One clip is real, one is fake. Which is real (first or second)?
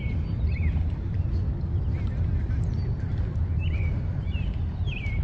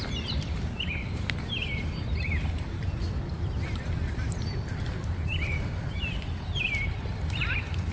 first